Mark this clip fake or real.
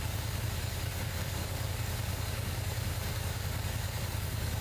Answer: fake